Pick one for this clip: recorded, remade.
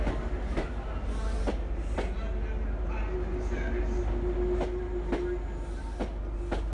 recorded